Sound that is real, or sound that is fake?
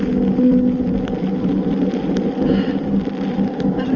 real